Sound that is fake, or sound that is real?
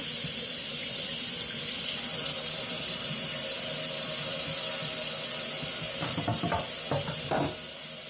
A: fake